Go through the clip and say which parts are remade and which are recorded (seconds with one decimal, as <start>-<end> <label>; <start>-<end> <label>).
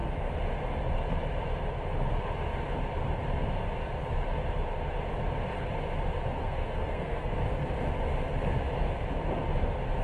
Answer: 0.0-6.4 recorded; 6.4-7.3 remade; 7.3-10.0 recorded